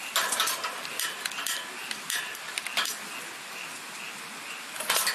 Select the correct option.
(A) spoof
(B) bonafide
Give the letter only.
B